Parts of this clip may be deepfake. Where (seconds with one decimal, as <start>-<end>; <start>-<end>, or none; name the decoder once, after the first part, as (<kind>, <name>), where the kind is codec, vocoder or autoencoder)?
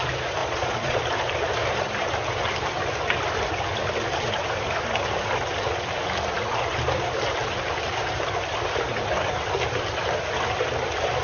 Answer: 0.4-1.0 (vocoder, Vocos)